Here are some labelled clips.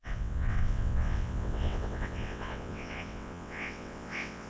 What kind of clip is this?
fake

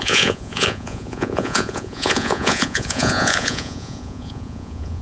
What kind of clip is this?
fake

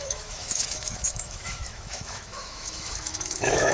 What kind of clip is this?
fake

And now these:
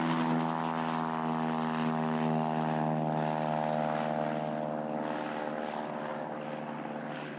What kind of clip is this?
real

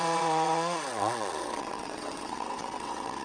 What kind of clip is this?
fake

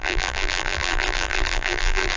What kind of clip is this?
fake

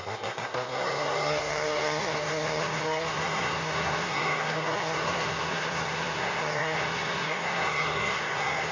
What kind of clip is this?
fake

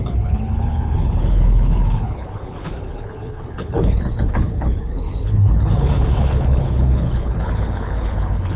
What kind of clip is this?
fake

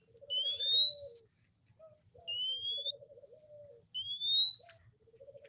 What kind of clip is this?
real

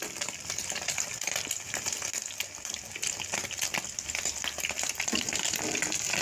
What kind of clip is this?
real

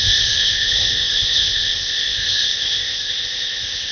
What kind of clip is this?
fake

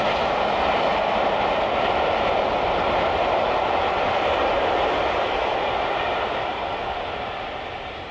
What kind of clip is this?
real